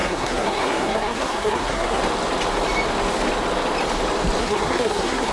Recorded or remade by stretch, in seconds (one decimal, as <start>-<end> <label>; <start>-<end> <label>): 0.0-2.0 remade; 2.0-4.4 recorded; 4.4-5.3 remade